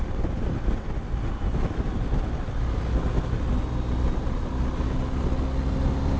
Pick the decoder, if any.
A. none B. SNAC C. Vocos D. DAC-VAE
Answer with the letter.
A